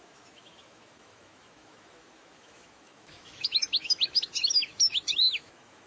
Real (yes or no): no